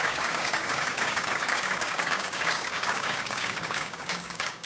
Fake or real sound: fake